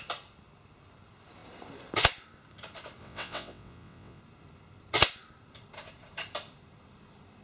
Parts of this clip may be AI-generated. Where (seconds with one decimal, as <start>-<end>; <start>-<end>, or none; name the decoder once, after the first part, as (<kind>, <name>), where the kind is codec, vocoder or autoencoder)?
3.0-4.2 (vocoder, WaveNeXt)